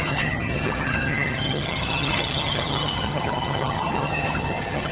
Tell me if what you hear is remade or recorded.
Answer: remade